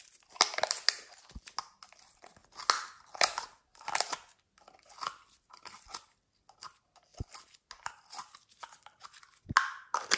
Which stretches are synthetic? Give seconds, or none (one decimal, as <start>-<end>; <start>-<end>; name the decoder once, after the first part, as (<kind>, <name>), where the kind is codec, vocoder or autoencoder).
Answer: none